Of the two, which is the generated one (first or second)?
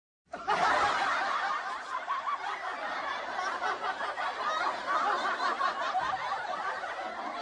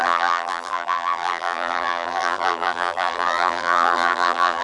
second